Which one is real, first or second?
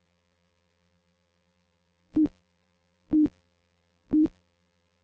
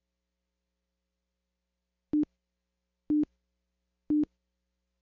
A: second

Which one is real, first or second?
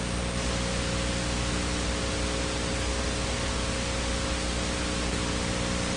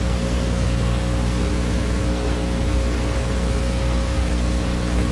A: first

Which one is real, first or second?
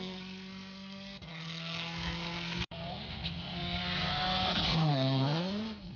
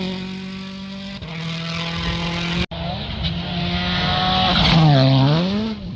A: second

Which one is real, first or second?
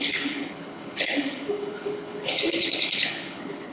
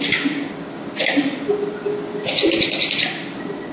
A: second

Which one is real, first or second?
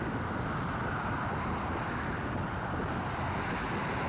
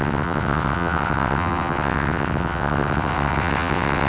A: first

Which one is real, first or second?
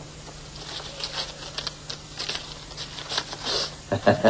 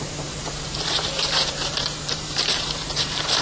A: first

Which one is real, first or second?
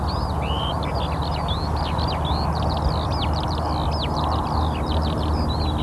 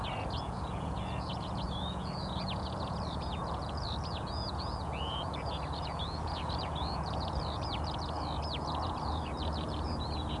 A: first